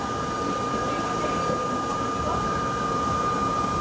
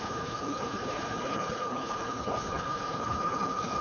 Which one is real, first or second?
first